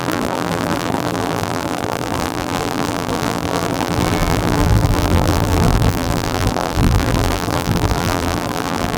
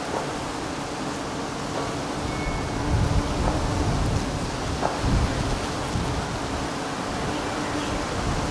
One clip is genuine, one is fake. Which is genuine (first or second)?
second